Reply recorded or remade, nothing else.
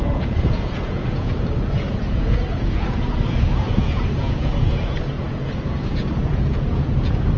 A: remade